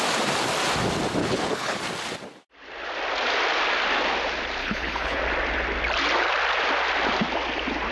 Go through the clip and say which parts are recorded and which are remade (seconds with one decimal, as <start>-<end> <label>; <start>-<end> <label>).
0.0-1.2 recorded; 1.2-1.8 remade; 1.8-4.6 recorded; 4.6-5.2 remade; 5.2-7.9 recorded

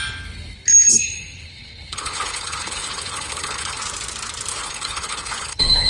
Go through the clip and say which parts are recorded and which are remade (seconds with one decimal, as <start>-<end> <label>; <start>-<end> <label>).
0.0-0.9 recorded; 0.9-3.8 remade; 3.8-4.5 recorded; 4.5-5.9 remade

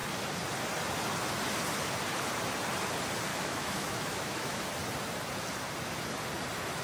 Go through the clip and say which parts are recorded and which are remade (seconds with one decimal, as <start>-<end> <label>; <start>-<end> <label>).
0.0-3.3 recorded; 3.3-4.6 remade; 4.6-6.8 recorded

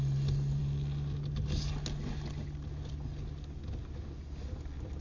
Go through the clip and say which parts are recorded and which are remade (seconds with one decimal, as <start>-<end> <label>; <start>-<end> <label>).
0.0-5.0 recorded

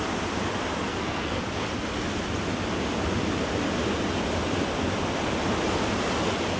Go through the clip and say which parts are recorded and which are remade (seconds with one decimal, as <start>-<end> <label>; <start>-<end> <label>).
0.0-0.9 recorded; 0.9-1.4 remade; 1.4-6.6 recorded